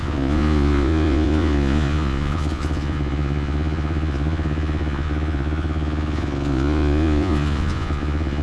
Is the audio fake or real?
fake